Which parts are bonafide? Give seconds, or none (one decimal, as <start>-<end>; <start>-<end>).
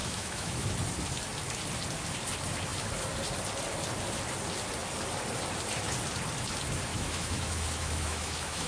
0.7-6.9